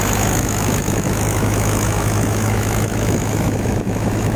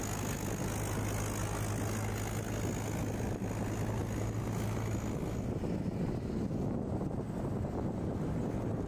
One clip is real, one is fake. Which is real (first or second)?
second